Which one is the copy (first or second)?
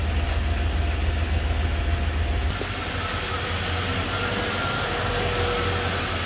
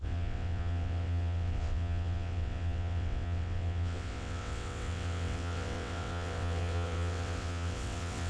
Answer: second